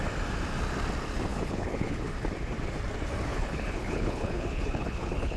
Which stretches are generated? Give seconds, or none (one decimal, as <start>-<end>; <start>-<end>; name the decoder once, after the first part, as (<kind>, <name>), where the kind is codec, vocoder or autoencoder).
1.3-2.1 (codec, HILCodec); 3.3-5.4